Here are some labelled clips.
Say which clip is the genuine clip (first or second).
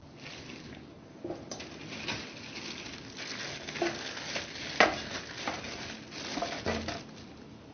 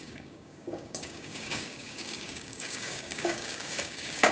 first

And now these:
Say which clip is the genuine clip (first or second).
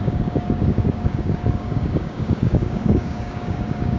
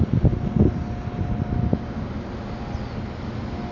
second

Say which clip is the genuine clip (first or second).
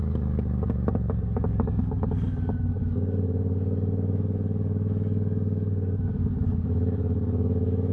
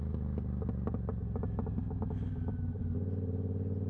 second